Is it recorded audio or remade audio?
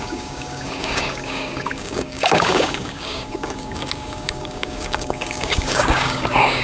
remade